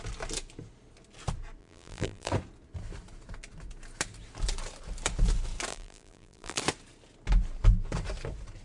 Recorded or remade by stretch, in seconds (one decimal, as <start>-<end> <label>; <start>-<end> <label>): 0.0-1.6 recorded; 1.6-2.3 remade; 2.3-5.7 recorded; 5.7-6.6 remade; 6.6-8.6 recorded